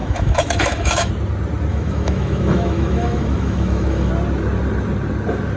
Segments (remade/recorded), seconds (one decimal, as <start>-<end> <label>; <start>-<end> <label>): 0.0-1.1 remade; 1.1-1.7 recorded; 1.7-4.1 remade; 4.1-5.6 recorded